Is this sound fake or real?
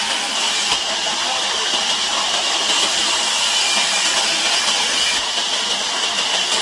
real